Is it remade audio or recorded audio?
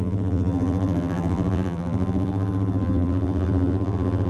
remade